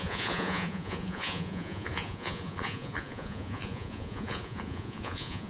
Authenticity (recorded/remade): remade